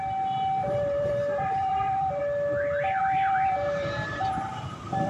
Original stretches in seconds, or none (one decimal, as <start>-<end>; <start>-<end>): 0.0-0.6; 2.2-3.0